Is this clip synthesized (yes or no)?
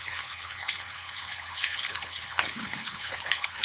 yes